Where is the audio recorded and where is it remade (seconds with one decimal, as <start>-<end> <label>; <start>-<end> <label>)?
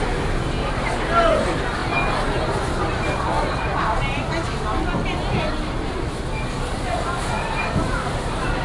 0.0-8.6 recorded